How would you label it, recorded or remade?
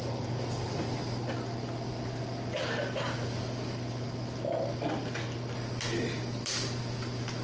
recorded